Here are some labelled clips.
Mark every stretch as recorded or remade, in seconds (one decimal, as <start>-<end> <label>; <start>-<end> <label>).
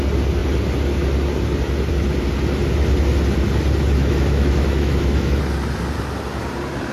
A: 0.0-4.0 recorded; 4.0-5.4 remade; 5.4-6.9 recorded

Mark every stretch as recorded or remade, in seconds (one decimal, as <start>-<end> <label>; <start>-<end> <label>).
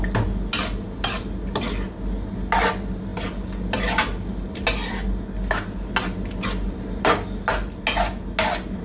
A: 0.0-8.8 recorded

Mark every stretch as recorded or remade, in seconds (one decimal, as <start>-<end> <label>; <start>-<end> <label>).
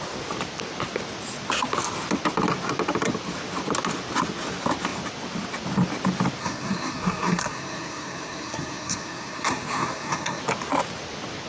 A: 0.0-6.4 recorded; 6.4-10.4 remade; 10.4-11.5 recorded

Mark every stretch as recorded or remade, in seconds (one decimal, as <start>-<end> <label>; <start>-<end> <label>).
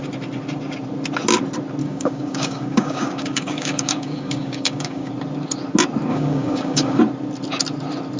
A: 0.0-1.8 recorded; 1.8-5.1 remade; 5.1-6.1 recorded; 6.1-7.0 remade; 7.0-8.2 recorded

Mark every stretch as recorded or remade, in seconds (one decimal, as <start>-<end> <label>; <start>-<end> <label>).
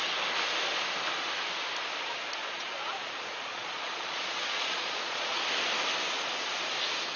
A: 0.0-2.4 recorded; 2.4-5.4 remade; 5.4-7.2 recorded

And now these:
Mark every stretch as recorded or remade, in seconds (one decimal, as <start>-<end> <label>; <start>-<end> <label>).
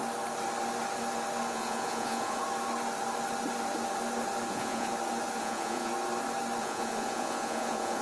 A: 0.0-1.5 recorded; 1.5-2.4 remade; 2.4-4.5 recorded; 4.5-4.9 remade; 4.9-5.4 recorded; 5.4-5.9 remade; 5.9-6.6 recorded; 6.6-8.0 remade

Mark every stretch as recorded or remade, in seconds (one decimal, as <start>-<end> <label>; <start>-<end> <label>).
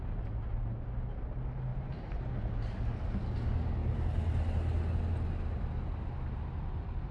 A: 0.0-1.7 recorded; 1.7-2.2 remade; 2.2-7.1 recorded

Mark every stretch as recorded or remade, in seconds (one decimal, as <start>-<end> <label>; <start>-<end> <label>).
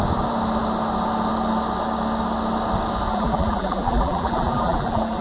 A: 0.0-3.1 recorded; 3.1-5.2 remade